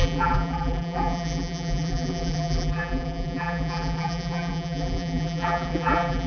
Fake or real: fake